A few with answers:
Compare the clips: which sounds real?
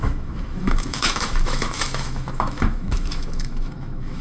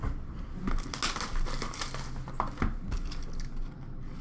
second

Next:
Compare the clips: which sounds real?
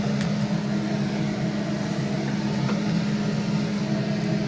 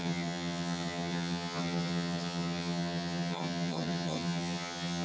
first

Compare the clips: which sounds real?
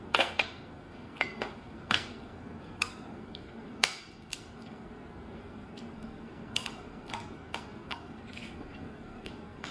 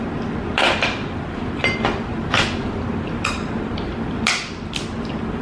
second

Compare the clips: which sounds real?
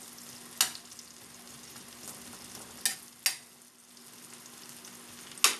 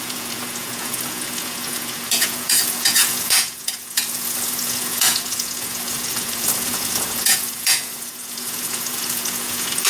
first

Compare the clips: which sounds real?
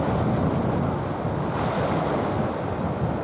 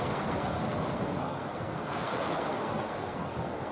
first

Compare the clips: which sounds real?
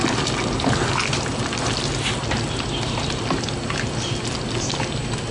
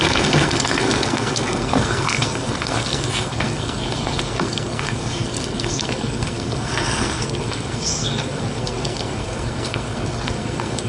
first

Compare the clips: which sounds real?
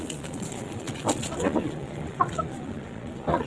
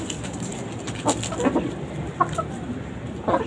second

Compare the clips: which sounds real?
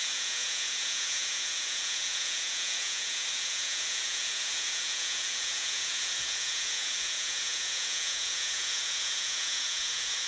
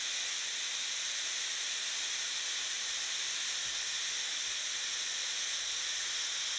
second